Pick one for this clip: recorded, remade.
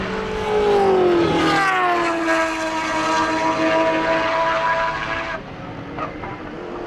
recorded